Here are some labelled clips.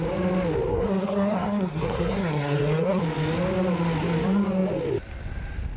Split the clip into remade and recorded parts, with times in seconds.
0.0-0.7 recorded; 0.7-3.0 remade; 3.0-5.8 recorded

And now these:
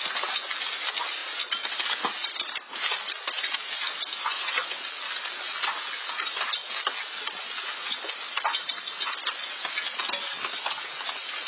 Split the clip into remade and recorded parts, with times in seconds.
0.0-11.5 recorded

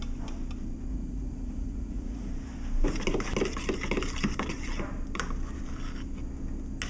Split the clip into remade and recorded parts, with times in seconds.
0.0-0.9 recorded; 0.9-2.3 remade; 2.3-6.9 recorded

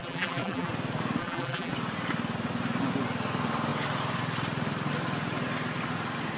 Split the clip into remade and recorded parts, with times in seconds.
0.0-0.7 remade; 0.7-1.2 recorded; 1.2-1.7 remade; 1.7-6.4 recorded

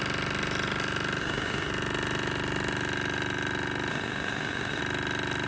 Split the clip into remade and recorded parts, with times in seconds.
0.0-1.2 recorded; 1.2-1.7 remade; 1.7-3.9 recorded; 3.9-4.8 remade; 4.8-5.5 recorded